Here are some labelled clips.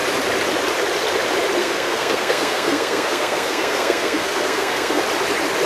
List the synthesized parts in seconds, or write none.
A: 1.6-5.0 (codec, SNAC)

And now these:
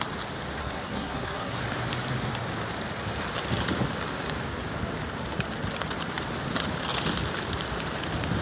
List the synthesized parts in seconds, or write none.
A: 0.6-1.6 (codec, SNAC)

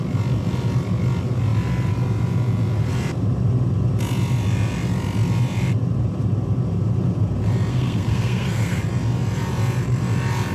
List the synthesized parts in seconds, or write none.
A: 7.7-8.8 (codec, SNAC)